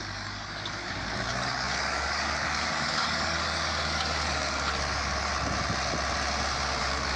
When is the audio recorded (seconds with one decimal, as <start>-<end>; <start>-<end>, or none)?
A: 5.3-6.8

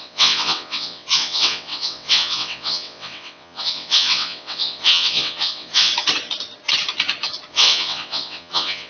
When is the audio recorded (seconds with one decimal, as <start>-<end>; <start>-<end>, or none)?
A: 5.9-7.5

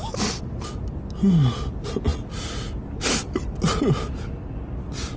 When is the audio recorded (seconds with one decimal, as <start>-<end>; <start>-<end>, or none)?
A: 0.0-5.2

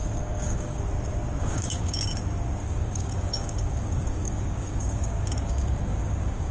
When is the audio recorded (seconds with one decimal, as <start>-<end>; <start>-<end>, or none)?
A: 0.8-1.4; 2.0-2.6

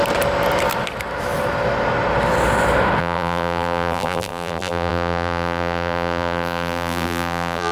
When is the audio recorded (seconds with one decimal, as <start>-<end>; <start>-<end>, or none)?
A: 0.0-3.0

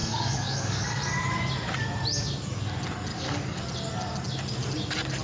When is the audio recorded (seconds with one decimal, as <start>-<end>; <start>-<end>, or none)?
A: 1.0-3.1; 3.6-5.2

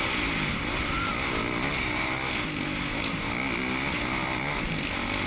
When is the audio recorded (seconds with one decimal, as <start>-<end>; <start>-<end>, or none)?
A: 0.0-5.3